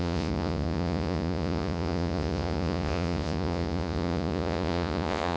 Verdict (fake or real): fake